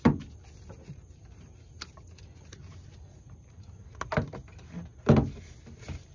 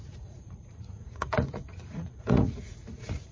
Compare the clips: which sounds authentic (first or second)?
first